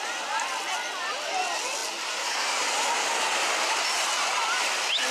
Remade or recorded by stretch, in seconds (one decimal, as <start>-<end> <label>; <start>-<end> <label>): 0.0-5.1 recorded